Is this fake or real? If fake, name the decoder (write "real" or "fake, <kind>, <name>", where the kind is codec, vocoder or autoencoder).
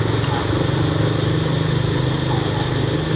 real